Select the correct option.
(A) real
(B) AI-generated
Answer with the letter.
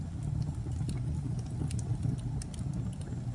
A